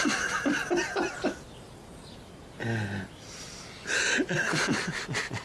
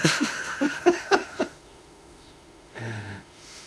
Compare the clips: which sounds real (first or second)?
first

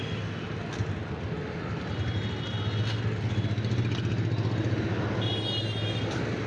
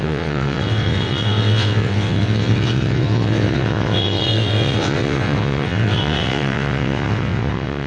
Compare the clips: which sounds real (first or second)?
first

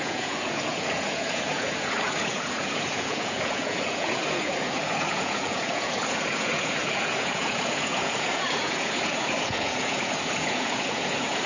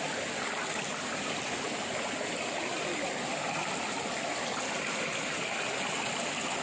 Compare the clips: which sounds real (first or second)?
second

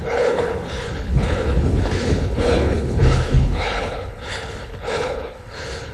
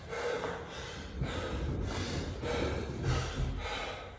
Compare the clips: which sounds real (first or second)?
second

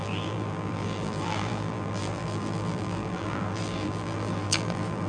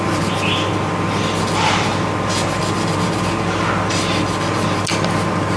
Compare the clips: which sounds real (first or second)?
second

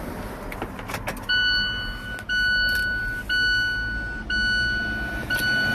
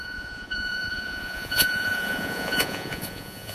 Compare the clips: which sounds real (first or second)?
first